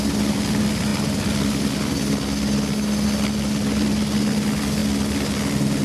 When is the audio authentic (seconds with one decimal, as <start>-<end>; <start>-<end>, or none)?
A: 0.0-5.8